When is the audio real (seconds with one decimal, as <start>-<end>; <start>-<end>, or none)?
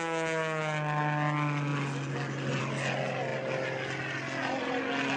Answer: 0.0-5.2